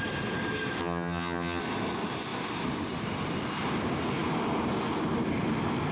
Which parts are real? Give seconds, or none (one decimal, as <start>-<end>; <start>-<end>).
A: 0.0-0.8; 1.6-5.9